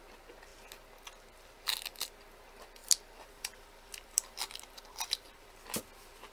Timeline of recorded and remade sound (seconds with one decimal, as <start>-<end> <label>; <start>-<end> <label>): 0.0-2.8 recorded; 2.8-5.8 remade; 5.8-6.3 recorded